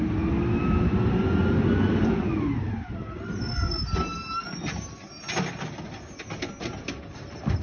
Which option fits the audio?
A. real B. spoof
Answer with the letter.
A